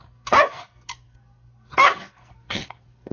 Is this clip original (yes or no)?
no